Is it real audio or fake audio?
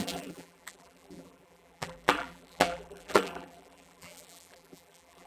fake